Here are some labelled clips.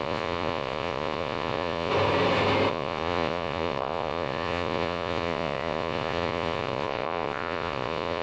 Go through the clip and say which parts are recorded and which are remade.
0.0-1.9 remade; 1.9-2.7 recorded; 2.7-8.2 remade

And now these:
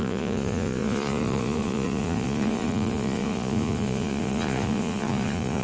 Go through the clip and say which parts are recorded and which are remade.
0.0-5.6 remade

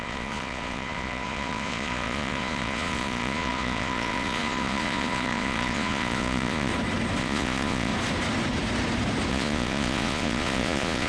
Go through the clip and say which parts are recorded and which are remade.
0.0-6.7 remade; 6.7-7.2 recorded; 7.2-7.9 remade; 7.9-9.3 recorded; 9.3-11.1 remade

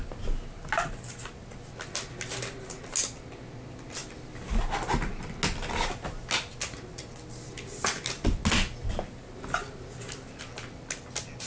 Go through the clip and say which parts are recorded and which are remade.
0.0-11.5 recorded

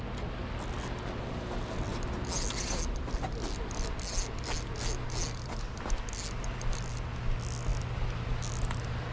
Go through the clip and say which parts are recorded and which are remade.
0.0-9.1 recorded

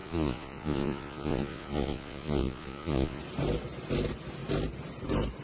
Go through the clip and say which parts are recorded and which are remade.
0.0-3.2 remade; 3.2-5.4 recorded

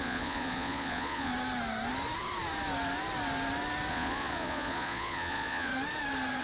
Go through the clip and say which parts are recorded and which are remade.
0.0-1.3 remade; 1.3-3.9 recorded; 3.9-5.7 remade; 5.7-6.4 recorded